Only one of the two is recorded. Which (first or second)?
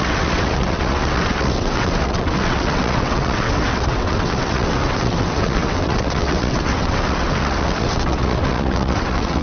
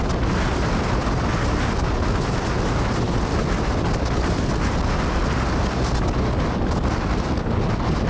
second